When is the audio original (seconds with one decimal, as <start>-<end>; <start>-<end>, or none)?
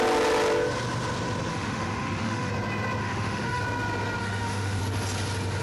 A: 0.0-1.5; 2.5-3.0; 3.6-4.2; 4.8-5.6